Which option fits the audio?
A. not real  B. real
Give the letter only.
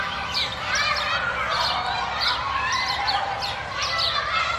B